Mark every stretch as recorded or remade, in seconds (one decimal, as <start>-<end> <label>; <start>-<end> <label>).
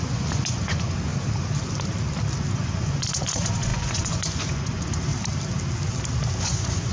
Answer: 0.0-1.1 remade; 1.1-2.5 recorded; 2.5-5.1 remade; 5.1-6.4 recorded; 6.4-6.9 remade